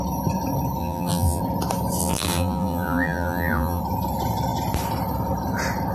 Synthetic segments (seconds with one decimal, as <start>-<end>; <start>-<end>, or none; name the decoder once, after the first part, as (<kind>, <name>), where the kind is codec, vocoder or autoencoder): 0.8-1.4 (vocoder, BigVGAN v2); 2.0-3.8